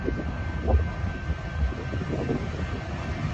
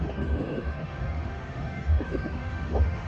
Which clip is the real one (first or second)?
first